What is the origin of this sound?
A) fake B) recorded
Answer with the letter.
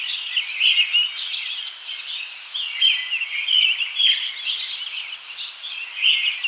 B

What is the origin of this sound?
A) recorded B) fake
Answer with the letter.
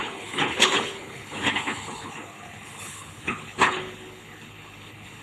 B